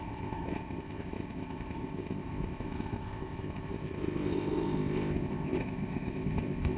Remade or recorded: remade